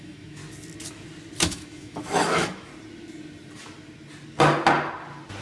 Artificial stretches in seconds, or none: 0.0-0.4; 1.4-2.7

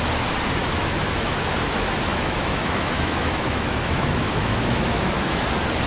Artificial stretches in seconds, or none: 0.6-1.4; 2.1-5.4

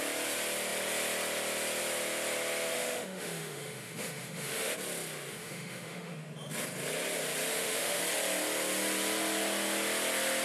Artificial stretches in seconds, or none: 2.7-4.7; 5.3-6.3; 7.5-8.0

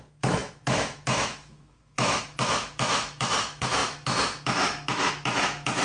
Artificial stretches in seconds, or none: 0.0-5.8

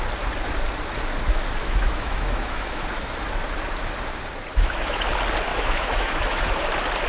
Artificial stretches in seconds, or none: 1.6-2.9; 4.5-5.1; 5.5-6.6

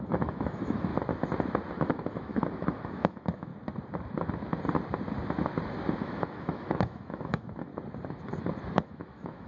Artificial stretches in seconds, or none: 0.0-0.9; 1.7-3.5; 6.0-7.7; 8.7-9.5